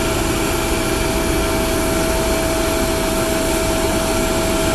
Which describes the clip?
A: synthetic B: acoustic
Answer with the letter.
B